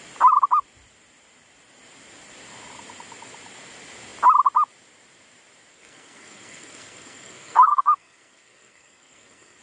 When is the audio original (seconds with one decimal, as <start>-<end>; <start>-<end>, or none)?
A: 0.0-5.7